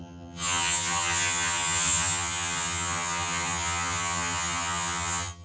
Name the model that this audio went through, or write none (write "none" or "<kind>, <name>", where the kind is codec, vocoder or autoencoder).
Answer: vocoder, HiFi-GAN